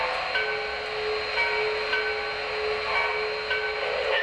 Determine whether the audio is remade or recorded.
recorded